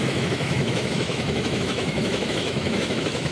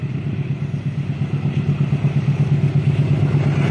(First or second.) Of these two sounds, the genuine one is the second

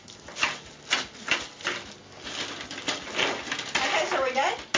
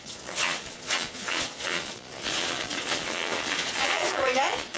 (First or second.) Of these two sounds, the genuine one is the first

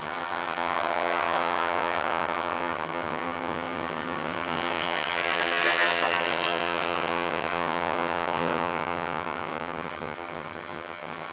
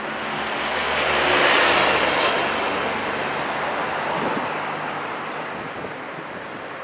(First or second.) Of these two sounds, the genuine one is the second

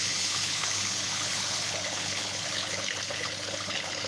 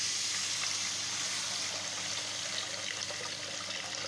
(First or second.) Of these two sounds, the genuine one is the second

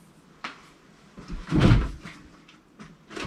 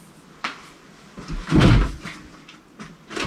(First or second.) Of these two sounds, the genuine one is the second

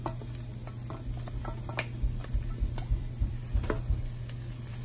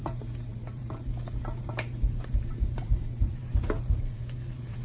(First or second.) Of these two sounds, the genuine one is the first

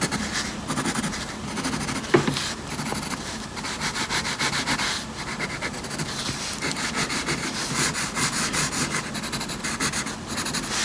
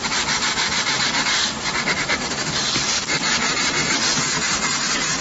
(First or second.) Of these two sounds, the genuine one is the first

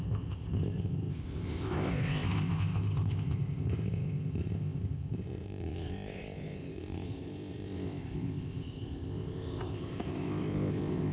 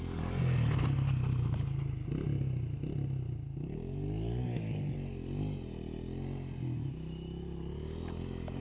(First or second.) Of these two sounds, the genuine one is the second